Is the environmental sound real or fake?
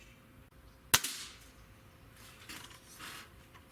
real